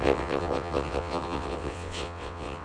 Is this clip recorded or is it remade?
remade